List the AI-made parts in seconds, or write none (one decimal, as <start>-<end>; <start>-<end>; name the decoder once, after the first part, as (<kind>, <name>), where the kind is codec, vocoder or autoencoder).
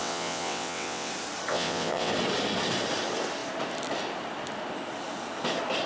0.0-1.1 (vocoder, WaveNeXt); 1.5-2.1